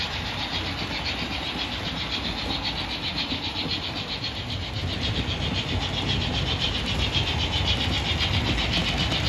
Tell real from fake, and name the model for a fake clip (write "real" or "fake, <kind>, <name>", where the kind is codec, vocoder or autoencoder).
real